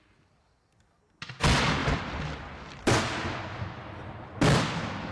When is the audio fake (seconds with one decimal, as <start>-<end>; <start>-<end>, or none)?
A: none